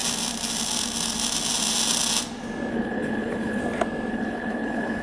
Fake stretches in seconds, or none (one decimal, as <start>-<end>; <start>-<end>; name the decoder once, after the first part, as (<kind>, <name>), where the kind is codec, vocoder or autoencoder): 2.7-3.6 (codec, HILCodec); 4.1-5.0